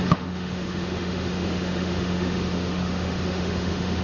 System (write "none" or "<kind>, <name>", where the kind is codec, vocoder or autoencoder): autoencoder, DAC-VAE